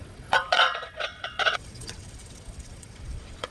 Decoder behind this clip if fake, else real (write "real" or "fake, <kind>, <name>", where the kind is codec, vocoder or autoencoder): fake, vocoder, WaveNeXt